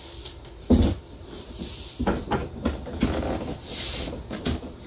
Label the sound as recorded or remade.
recorded